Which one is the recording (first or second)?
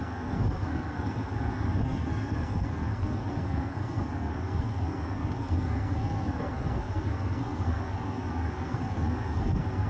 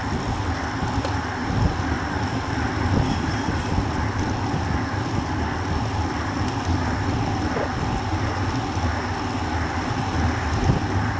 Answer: second